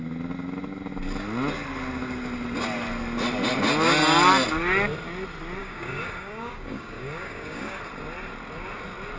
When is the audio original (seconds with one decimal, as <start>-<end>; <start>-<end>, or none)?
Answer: 0.0-5.6; 7.8-9.2